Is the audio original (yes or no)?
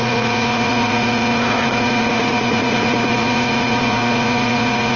no